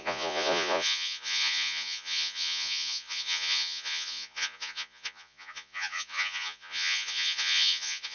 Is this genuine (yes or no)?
no